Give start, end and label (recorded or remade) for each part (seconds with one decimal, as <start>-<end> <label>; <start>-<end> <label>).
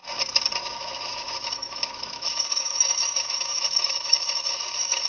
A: 0.0-0.6 recorded; 0.6-5.1 remade